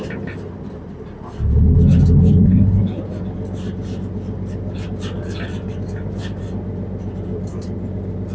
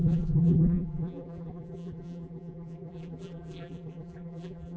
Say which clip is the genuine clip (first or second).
first